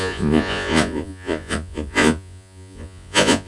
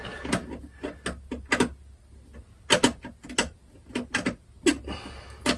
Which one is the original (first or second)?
second